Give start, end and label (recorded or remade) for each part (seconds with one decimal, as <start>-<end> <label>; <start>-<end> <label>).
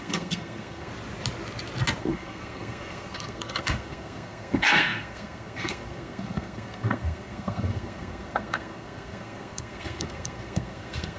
0.0-0.9 remade; 0.9-2.0 recorded; 2.0-11.2 remade